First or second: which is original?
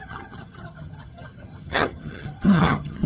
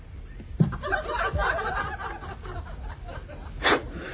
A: second